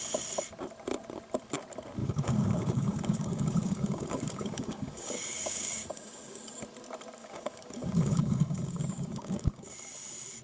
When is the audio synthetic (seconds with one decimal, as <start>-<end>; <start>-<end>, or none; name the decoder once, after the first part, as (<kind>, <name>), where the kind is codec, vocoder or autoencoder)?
2.0-6.4 (codec, DAC); 7.2-9.7